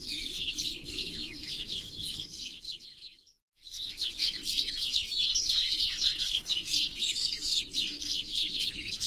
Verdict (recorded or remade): remade